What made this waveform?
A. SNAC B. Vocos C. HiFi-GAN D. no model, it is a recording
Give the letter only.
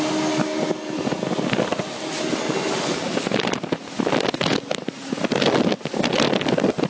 D